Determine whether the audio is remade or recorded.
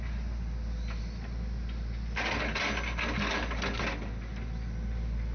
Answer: recorded